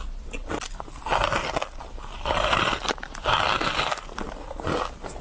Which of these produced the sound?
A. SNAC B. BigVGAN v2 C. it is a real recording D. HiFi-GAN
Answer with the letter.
C